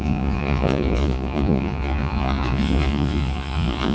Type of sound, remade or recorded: remade